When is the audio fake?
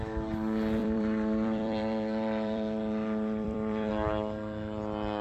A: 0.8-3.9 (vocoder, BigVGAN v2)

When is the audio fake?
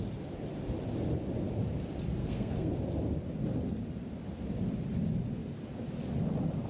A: 2.2-2.7 (codec, SNAC)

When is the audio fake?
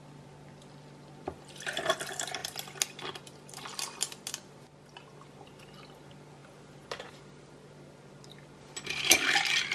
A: none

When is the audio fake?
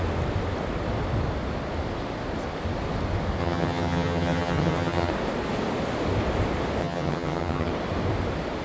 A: 3.4-5.1 (vocoder, HiFi-GAN); 6.8-7.7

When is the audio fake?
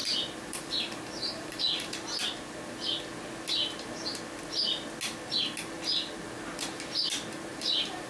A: 0.0-1.6 (vocoder, BigVGAN v2); 7.5-8.1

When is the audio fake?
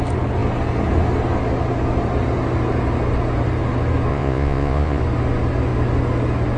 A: 4.1-5.0 (vocoder, Vocos)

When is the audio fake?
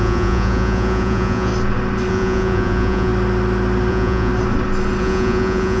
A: 0.0-1.5 (vocoder, Vocos); 2.1-3.1; 3.9-4.3; 5.0-5.8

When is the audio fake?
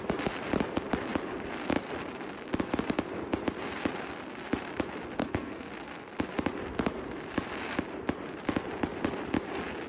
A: 5.2-5.7 (codec, SNAC)